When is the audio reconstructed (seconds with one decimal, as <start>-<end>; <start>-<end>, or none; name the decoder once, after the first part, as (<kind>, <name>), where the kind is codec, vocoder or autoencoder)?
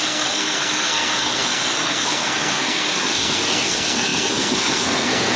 0.0-5.4 (codec, SNAC)